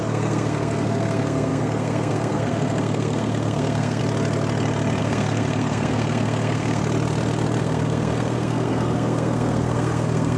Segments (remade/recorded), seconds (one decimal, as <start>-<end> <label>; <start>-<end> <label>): 0.0-4.0 remade; 4.0-5.0 recorded; 5.0-6.8 remade; 6.8-7.6 recorded; 7.6-10.4 remade